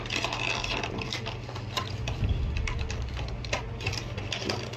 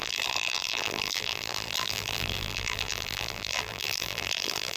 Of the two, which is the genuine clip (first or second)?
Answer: first